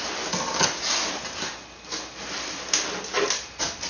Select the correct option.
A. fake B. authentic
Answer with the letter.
B